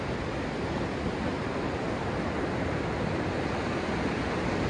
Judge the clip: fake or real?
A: real